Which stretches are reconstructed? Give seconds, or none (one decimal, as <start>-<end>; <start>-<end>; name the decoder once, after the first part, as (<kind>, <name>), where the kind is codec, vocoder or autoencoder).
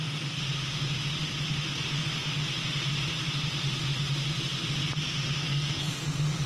5.4-6.5 (codec, SNAC)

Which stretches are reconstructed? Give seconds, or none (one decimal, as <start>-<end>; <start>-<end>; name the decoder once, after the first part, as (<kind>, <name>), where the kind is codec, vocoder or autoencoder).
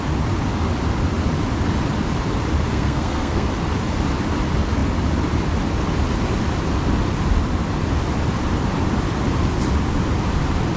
2.7-3.5 (codec, SNAC)